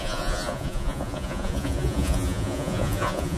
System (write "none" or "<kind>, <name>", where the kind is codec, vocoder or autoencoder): vocoder, Vocos